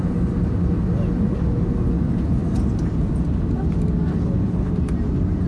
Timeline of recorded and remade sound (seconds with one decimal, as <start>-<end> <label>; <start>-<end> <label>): 0.0-4.1 recorded; 4.1-4.7 remade; 4.7-5.5 recorded